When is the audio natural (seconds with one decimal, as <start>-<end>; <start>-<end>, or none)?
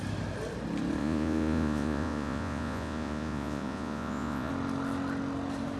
0.0-1.0; 4.5-5.8